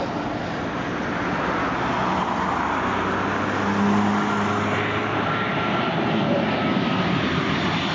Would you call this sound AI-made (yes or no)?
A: no